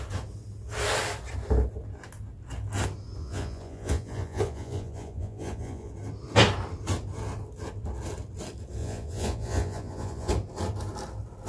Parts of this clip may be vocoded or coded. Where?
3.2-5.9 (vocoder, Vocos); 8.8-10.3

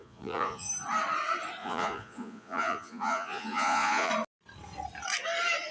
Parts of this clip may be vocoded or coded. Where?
0.0-0.7 (vocoder, Vocos); 1.6-4.1

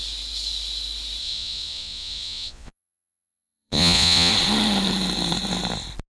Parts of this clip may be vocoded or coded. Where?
1.2-4.3 (vocoder, Vocos)

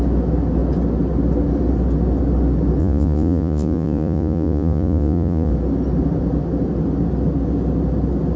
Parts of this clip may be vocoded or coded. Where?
2.8-5.5 (vocoder, Vocos)

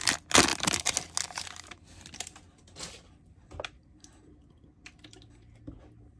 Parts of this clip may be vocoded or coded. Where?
none

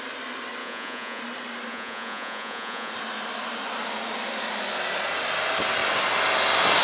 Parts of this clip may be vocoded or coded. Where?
0.6-1.2 (vocoder, Vocos); 1.7-2.9

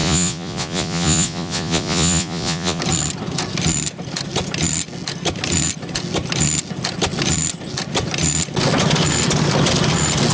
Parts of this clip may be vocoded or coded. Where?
0.0-2.8 (vocoder, Vocos)

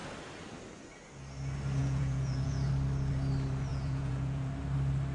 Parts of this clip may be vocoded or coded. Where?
1.8-2.7 (vocoder, Vocos); 3.7-4.5